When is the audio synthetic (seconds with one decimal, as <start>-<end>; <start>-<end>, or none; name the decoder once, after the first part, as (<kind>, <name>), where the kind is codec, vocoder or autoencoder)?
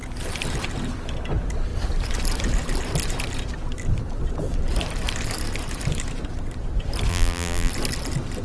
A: 7.1-7.7 (vocoder, BigVGAN v2)